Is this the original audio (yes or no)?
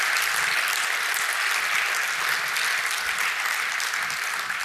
yes